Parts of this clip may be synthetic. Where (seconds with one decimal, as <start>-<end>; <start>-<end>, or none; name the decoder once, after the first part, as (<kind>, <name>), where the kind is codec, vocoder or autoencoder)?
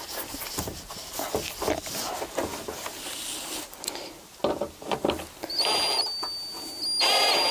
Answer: none